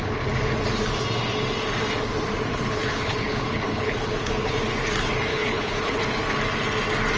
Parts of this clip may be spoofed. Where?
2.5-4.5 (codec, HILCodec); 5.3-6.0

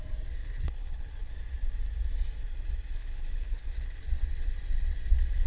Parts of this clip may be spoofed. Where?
0.4-1.3 (codec, HILCodec); 3.0-4.0

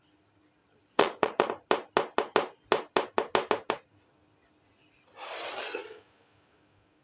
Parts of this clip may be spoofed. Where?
0.6-1.5 (vocoder, Vocos)

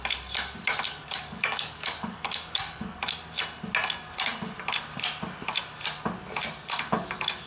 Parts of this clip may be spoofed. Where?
0.9-3.0 (codec, DAC)